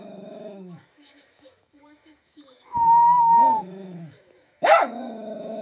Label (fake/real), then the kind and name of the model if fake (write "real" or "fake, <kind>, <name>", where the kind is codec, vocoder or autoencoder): fake, autoencoder, DAC-VAE